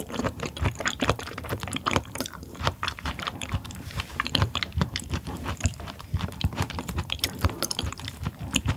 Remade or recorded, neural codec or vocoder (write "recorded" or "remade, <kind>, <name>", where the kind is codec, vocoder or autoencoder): remade, vocoder, BigVGAN v2